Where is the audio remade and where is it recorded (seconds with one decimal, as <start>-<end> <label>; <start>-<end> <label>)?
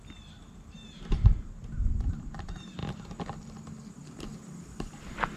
0.0-0.4 recorded; 0.4-2.0 remade; 2.0-5.4 recorded